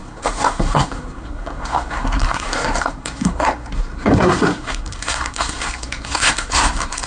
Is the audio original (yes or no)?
no